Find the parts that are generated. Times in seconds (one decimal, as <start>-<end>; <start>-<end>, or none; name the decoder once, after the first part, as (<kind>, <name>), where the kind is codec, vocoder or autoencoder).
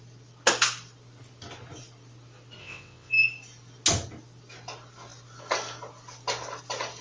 2.6-3.1 (vocoder, WaveNeXt)